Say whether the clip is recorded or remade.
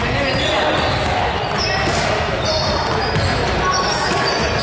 recorded